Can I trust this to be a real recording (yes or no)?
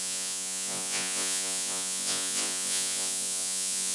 no